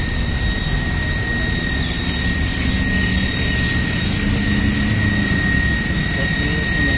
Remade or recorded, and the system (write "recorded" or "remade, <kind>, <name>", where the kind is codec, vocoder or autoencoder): recorded